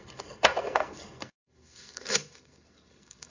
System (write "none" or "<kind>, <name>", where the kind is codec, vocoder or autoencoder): codec, SNAC